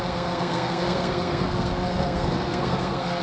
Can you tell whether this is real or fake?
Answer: fake